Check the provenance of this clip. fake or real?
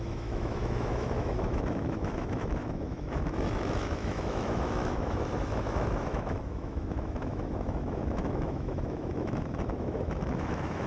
fake